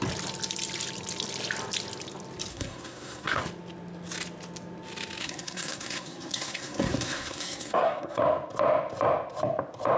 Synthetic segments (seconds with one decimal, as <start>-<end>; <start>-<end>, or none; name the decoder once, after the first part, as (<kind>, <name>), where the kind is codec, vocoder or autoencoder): 2.5-3.4 (codec, SNAC); 5.2-8.2